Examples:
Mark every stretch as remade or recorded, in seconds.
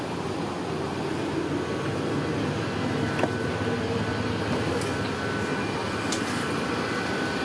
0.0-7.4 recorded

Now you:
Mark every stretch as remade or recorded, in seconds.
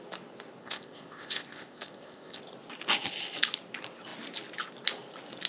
0.0-0.6 recorded; 0.6-2.4 remade; 2.4-5.5 recorded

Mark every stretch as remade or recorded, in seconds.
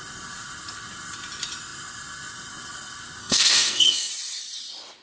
0.0-3.2 recorded; 3.2-4.1 remade; 4.1-5.0 recorded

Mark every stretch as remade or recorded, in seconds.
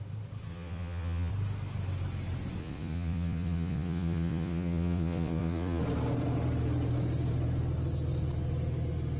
0.0-0.5 recorded; 0.5-1.3 remade; 1.3-2.6 recorded; 2.6-5.8 remade; 5.8-9.2 recorded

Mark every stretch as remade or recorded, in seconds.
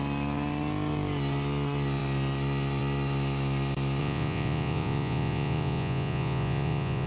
0.0-4.0 recorded; 4.0-7.1 remade